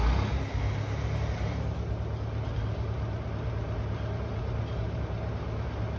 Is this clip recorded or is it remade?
recorded